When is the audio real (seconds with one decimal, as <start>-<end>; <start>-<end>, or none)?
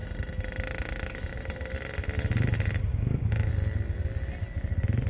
0.0-2.9; 3.5-5.1